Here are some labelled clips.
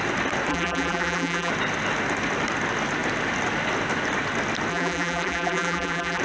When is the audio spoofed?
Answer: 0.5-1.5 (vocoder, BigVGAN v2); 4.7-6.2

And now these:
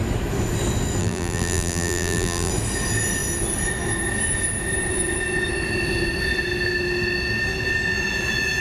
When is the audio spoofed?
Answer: 1.0-2.5 (vocoder, BigVGAN v2)

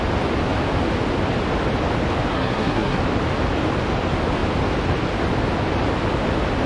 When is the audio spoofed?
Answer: 2.3-3.0 (codec, SNAC)

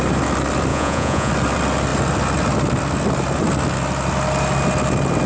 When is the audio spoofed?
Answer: 0.7-1.3 (vocoder, Vocos)

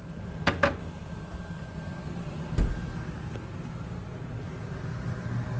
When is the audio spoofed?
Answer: none

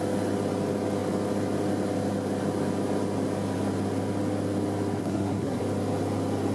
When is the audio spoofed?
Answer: 5.0-5.6 (codec, SNAC)